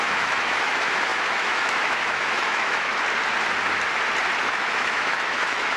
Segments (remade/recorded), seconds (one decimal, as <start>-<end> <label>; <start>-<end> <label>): 0.0-2.9 remade; 2.9-4.4 recorded; 4.4-5.8 remade